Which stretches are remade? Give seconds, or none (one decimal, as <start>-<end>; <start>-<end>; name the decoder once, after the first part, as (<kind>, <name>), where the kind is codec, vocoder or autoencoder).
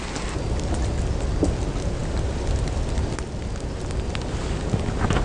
none